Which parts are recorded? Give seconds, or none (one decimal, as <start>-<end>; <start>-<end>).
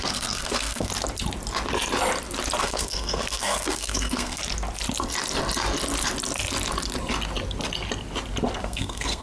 0.9-2.6; 4.4-8.6